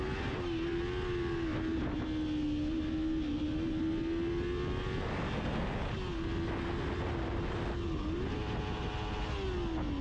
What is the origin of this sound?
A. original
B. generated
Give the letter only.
A